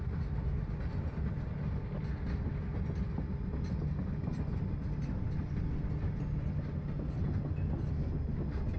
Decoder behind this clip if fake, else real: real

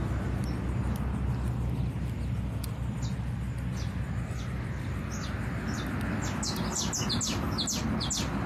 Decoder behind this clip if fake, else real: real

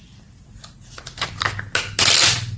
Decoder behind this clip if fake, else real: real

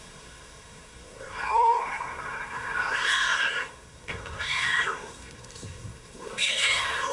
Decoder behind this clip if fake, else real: fake, codec, SNAC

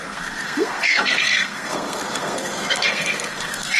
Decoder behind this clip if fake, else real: fake, codec, SNAC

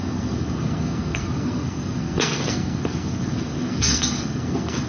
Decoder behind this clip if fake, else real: fake, codec, SNAC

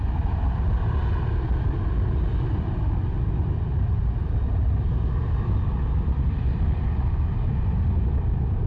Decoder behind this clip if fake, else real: real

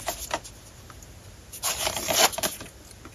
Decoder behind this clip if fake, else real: real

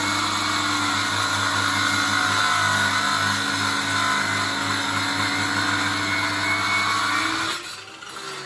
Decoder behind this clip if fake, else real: real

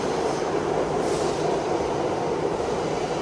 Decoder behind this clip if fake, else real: real